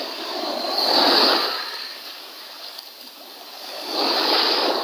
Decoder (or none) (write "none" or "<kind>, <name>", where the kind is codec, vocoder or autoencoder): codec, DAC